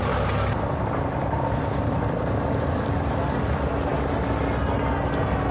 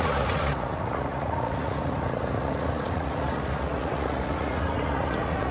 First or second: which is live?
first